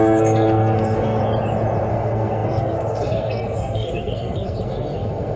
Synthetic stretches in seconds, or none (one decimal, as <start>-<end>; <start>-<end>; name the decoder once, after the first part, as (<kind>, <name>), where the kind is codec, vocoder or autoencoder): 0.0-1.2 (codec, SNAC); 1.9-5.4